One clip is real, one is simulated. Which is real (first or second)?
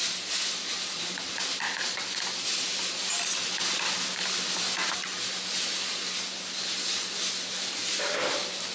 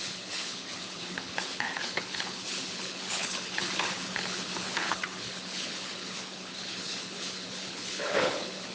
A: first